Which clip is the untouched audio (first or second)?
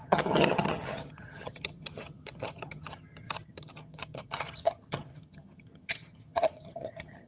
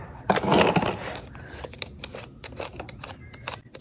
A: second